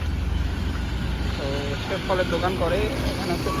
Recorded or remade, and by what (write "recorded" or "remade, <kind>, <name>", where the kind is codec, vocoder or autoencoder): recorded